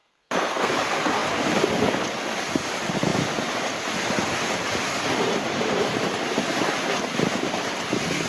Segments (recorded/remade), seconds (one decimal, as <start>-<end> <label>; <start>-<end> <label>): 0.0-0.7 remade; 0.7-8.3 recorded